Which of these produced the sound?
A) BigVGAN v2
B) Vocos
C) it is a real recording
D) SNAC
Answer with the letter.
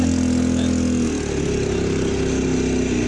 C